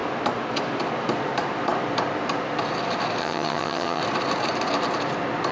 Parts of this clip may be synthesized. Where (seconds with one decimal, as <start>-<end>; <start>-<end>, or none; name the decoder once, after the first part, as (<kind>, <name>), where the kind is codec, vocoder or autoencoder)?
3.2-4.0 (vocoder, HiFi-GAN)